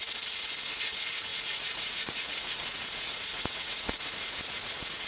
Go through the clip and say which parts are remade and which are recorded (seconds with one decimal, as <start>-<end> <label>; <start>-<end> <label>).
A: 0.0-5.1 remade

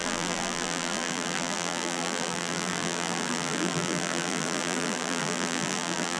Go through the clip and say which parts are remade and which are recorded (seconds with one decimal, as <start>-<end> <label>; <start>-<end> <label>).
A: 0.0-6.2 remade